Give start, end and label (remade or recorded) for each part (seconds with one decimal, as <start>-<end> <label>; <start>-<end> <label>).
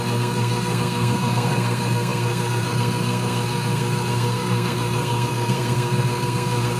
0.0-6.8 remade